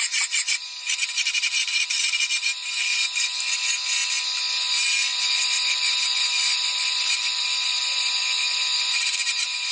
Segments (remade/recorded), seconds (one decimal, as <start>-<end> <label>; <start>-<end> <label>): 0.0-4.0 remade; 4.0-4.7 recorded; 4.7-9.7 remade

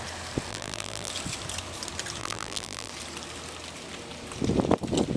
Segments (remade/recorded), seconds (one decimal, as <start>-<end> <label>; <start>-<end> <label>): 0.0-0.5 recorded; 0.5-1.1 remade; 1.1-2.2 recorded; 2.2-2.9 remade; 2.9-5.2 recorded

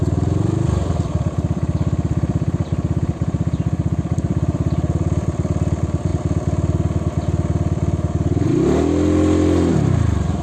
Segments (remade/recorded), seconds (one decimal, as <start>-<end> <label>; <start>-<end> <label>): 0.0-6.1 remade; 6.1-9.7 recorded; 9.7-10.4 remade

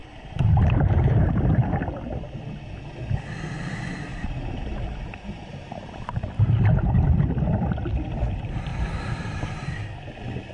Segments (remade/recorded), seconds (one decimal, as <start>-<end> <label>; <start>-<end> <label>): 0.0-1.9 remade; 1.9-4.1 recorded; 4.1-7.3 remade; 7.3-8.7 recorded; 8.7-9.7 remade; 9.7-10.5 recorded

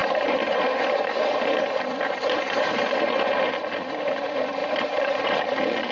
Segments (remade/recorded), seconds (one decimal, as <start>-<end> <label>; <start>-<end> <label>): 0.0-3.5 remade; 3.5-4.6 recorded; 4.6-5.4 remade; 5.4-5.9 recorded